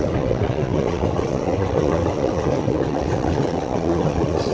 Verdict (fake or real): fake